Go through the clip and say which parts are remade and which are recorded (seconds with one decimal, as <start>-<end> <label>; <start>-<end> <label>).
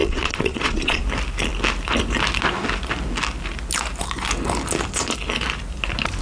0.0-1.0 remade; 1.0-6.2 recorded